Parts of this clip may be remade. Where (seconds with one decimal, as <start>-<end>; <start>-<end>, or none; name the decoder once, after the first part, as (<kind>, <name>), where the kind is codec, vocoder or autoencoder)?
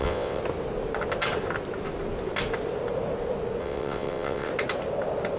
0.0-0.4 (vocoder, WaveNeXt); 3.6-4.5